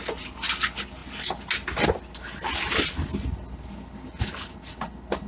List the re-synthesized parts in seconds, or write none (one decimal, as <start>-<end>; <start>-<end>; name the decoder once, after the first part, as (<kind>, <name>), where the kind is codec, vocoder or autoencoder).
none